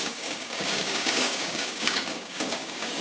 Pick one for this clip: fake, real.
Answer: fake